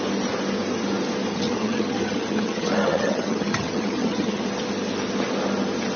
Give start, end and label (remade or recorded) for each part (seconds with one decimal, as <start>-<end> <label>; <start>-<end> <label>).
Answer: 0.0-1.3 recorded; 1.3-4.4 remade; 4.4-6.0 recorded